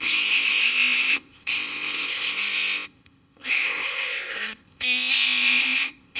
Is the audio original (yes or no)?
no